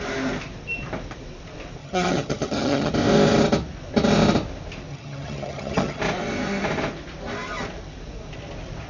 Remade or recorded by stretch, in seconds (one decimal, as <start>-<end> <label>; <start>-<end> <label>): 0.0-1.8 recorded; 1.8-2.9 remade; 2.9-4.9 recorded; 4.9-6.0 remade; 6.0-8.9 recorded